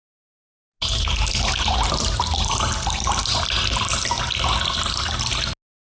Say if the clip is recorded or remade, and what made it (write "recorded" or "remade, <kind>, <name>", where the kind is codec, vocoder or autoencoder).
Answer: recorded